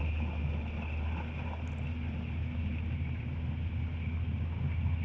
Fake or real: real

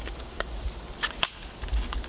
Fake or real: real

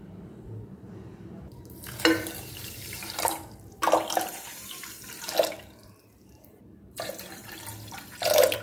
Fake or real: fake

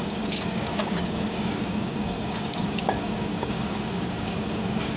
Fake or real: fake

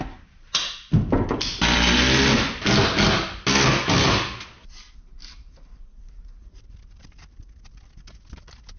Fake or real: real